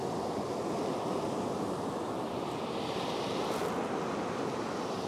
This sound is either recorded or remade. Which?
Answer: recorded